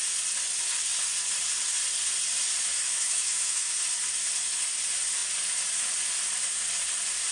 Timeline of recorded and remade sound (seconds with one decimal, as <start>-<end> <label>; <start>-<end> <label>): 0.0-2.9 recorded; 2.9-3.7 remade; 3.7-7.3 recorded